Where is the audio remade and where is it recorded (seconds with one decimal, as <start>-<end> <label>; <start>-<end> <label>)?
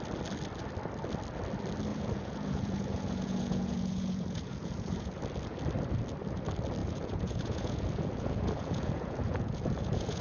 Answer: 0.0-1.9 recorded; 1.9-5.2 remade; 5.2-6.8 recorded; 6.8-10.2 remade